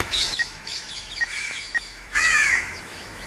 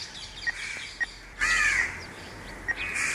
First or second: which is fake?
first